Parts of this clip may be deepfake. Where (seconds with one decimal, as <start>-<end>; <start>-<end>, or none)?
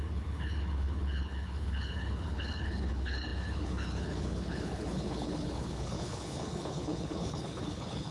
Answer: 0.0-8.1